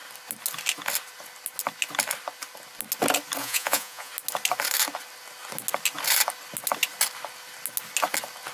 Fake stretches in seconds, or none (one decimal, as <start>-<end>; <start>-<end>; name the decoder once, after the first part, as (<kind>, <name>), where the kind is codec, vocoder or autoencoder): 3.4-4.1 (vocoder, Vocos)